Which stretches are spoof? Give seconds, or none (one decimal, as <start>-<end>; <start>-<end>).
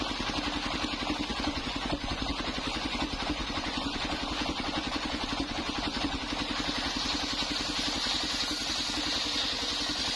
1.3-6.2